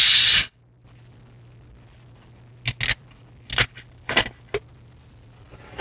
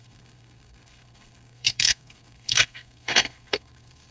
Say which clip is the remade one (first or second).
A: second